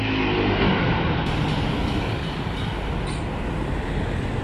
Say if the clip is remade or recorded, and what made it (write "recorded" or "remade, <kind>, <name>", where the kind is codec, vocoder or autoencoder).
recorded